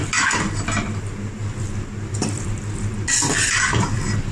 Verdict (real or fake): fake